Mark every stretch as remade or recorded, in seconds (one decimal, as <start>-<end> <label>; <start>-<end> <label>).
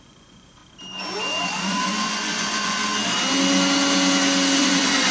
0.0-0.6 remade; 0.6-1.4 recorded; 1.4-2.8 remade; 2.8-4.6 recorded; 4.6-5.1 remade